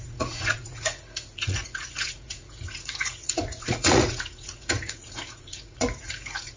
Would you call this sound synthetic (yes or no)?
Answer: yes